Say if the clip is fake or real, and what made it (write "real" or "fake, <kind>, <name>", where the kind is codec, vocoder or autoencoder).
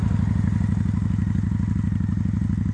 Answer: real